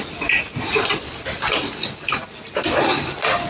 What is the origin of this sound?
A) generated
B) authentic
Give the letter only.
B